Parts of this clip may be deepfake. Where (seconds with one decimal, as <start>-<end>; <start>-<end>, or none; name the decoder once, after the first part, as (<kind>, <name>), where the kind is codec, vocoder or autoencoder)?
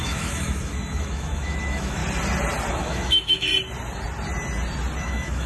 0.0-2.0 (autoencoder, DAC-VAE); 2.7-3.5; 5.0-5.5